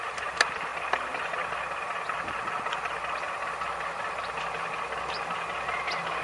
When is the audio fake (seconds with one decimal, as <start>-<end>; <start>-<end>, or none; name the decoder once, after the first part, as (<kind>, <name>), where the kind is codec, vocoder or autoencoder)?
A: none